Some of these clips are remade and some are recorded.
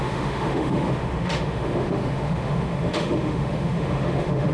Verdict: remade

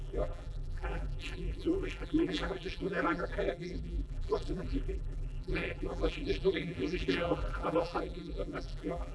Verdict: remade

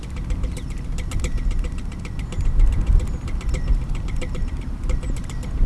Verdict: recorded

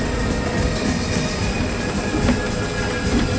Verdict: recorded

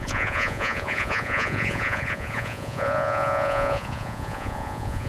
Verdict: remade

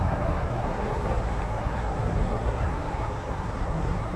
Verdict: remade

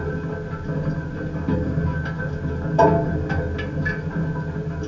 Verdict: recorded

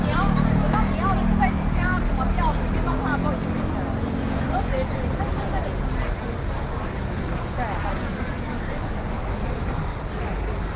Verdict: recorded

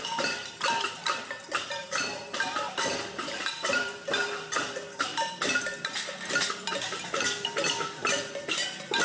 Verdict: remade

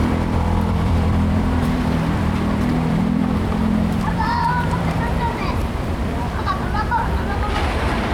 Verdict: remade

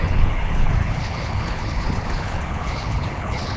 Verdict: remade